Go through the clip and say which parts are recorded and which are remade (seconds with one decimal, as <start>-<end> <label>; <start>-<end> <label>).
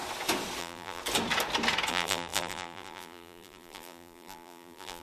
0.0-0.6 recorded; 0.6-1.0 remade; 1.0-1.9 recorded; 1.9-5.0 remade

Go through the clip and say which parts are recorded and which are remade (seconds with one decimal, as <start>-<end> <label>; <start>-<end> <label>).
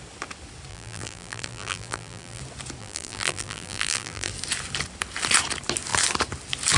0.0-0.7 recorded; 0.7-2.4 remade; 2.4-2.8 recorded; 2.8-4.3 remade; 4.3-6.8 recorded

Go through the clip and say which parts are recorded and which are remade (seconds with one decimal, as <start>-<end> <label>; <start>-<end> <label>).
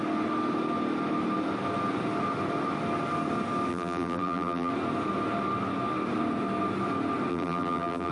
0.0-3.7 recorded; 3.7-4.7 remade; 4.7-7.3 recorded; 7.3-8.1 remade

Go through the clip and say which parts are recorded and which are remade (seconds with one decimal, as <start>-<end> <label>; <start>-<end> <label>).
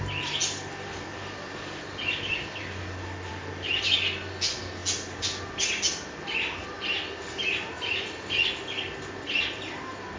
0.0-0.4 recorded; 0.4-3.3 remade; 3.3-10.2 recorded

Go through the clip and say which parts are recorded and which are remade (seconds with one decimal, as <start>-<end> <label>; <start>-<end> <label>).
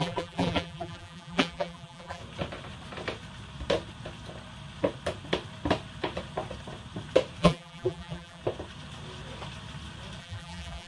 0.0-2.2 remade; 2.2-7.4 recorded; 7.4-8.4 remade; 8.4-10.2 recorded; 10.2-10.9 remade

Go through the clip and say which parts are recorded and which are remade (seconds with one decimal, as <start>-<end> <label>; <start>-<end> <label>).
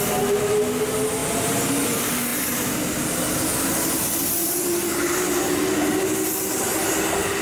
0.0-1.2 recorded; 1.2-1.7 remade; 1.7-2.3 recorded; 2.3-3.0 remade; 3.0-4.4 recorded; 4.4-5.4 remade; 5.4-7.4 recorded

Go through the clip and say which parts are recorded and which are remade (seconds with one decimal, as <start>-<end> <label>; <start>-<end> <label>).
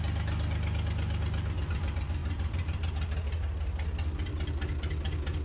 0.0-2.2 recorded; 2.2-2.9 remade; 2.9-5.4 recorded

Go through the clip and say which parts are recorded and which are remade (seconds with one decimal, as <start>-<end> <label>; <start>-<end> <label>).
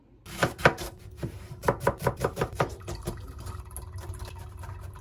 0.0-0.4 recorded; 0.4-3.4 remade; 3.4-5.0 recorded